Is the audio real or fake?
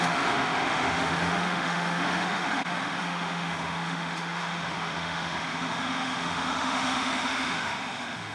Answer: fake